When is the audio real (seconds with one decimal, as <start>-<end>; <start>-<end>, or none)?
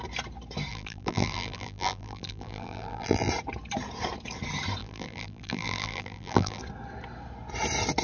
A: 0.0-0.7; 3.3-4.8; 6.6-8.0